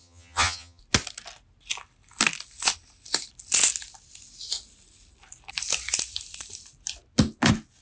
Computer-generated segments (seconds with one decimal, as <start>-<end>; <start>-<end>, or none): 0.0-0.8